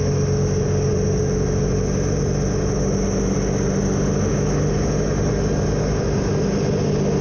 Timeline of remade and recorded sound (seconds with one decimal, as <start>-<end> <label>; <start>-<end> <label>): 0.0-7.2 recorded